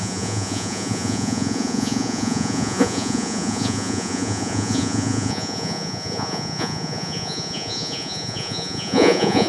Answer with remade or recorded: remade